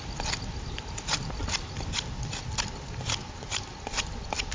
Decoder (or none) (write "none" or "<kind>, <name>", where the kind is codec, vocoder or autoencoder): none